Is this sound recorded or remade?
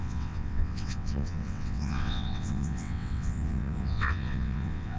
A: remade